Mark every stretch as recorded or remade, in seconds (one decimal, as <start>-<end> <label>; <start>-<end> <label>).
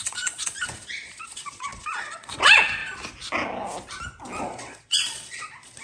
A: 0.0-2.8 remade; 2.8-4.4 recorded; 4.4-5.8 remade